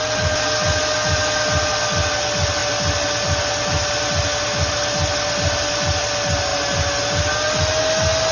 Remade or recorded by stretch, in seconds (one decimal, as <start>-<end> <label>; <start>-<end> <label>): 0.0-8.3 recorded